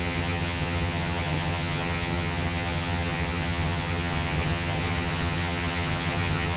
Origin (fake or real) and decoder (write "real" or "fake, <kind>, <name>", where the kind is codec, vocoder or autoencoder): fake, vocoder, HiFi-GAN